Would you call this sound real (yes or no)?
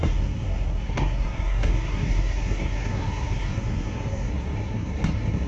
no